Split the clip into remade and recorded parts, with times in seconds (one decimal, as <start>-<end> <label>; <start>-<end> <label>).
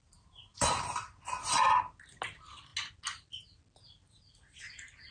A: 0.0-5.1 recorded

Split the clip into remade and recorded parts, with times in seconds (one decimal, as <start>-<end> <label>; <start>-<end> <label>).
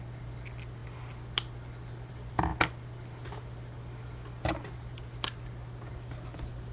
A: 0.0-6.7 recorded